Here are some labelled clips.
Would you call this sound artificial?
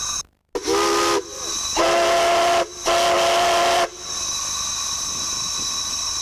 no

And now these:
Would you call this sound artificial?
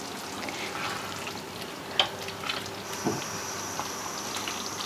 no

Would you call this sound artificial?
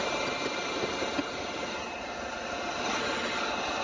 no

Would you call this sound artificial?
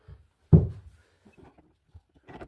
no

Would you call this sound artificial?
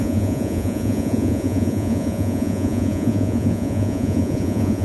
yes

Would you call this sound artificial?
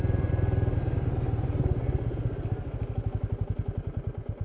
no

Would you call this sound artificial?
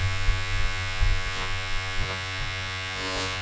yes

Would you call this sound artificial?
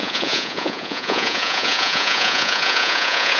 yes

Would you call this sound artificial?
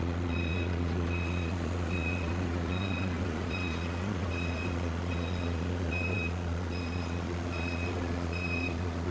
yes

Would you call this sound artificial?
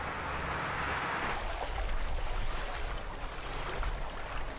no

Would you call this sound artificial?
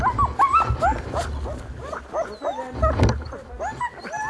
no